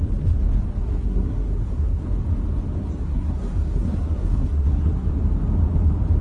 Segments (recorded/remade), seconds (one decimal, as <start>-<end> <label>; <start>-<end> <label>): 0.0-0.8 recorded; 0.8-2.0 remade; 2.0-3.0 recorded; 3.0-5.1 remade; 5.1-6.2 recorded